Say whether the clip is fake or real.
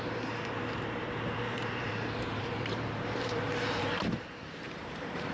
fake